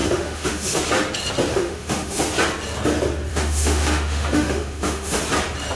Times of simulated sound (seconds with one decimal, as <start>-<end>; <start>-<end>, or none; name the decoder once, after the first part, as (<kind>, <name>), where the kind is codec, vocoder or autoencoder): 0.0-0.8 (autoencoder, DAC-VAE); 1.5-2.2; 3.3-5.2